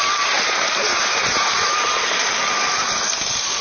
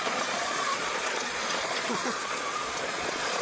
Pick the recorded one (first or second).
first